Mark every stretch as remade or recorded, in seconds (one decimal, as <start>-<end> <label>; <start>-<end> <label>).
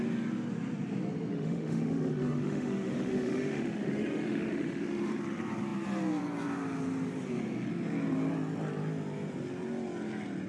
0.0-1.3 recorded; 1.3-5.1 remade; 5.1-10.5 recorded